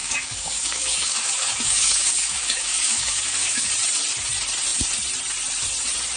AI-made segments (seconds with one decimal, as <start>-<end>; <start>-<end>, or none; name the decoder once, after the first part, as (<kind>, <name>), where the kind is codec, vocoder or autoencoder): 0.0-3.7 (codec, DAC)